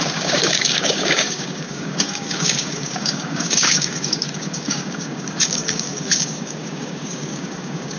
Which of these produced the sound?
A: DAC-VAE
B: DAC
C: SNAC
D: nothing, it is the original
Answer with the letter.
B